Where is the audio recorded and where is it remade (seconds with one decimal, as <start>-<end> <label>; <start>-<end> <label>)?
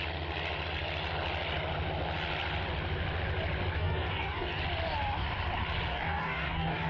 0.0-3.7 recorded; 3.7-4.6 remade; 4.6-5.9 recorded; 5.9-6.9 remade